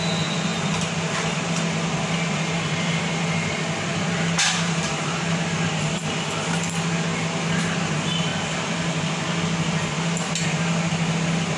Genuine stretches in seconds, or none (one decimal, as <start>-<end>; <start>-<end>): 0.0-3.9; 6.1-11.6